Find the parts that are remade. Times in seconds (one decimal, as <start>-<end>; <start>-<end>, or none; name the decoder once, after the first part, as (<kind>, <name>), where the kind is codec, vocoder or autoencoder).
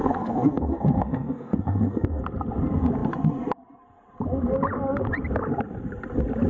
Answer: 0.0-2.2 (codec, SNAC)